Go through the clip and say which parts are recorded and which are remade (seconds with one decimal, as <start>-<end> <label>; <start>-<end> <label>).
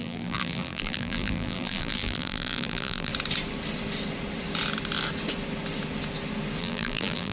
0.0-3.1 remade; 3.1-6.6 recorded; 6.6-7.3 remade